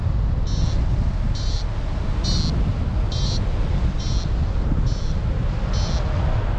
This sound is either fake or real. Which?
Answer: real